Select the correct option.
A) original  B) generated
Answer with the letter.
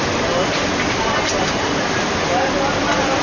A